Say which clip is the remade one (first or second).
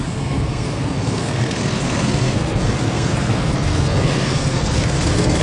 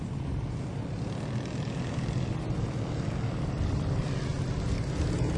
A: first